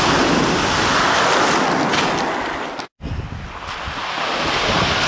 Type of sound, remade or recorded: recorded